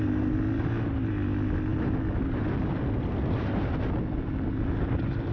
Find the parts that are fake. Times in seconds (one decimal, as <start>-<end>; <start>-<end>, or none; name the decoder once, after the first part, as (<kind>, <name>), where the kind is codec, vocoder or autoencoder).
none

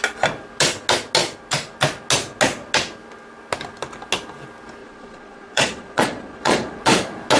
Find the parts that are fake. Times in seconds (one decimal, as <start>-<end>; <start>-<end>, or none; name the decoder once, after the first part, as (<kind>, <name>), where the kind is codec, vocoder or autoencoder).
4.8-6.8 (vocoder, Vocos)

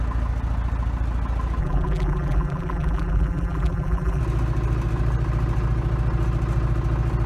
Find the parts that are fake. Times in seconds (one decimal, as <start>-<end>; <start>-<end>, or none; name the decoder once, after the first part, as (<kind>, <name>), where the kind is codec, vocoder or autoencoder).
1.6-4.2 (vocoder, BigVGAN v2)

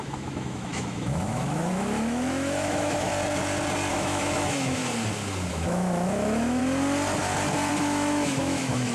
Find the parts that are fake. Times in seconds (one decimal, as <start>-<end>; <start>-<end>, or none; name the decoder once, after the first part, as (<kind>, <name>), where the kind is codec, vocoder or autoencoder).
0.0-3.1 (autoencoder, DAC-VAE); 3.9-4.8; 5.5-6.6; 7.7-8.9